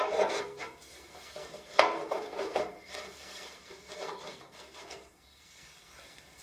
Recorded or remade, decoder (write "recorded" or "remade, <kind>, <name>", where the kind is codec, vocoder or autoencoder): remade, codec, SNAC